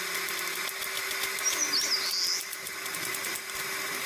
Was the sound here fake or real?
real